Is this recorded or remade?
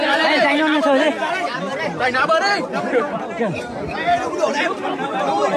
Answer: recorded